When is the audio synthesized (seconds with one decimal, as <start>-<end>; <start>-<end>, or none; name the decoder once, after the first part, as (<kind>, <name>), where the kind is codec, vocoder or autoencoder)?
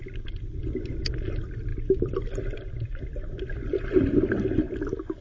0.0-1.1 (vocoder, BigVGAN v2); 1.7-3.7